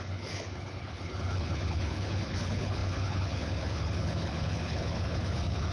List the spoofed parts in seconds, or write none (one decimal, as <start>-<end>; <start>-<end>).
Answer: 0.0-5.7